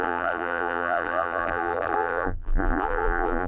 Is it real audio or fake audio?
fake